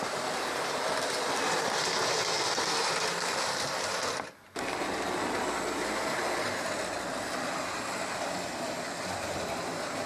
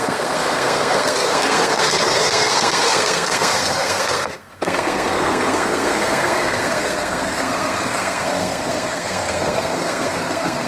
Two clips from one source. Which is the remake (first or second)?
second